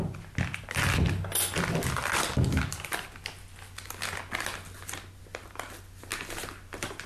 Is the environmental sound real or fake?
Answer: real